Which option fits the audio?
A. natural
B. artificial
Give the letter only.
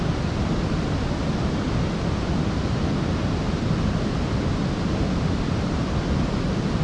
B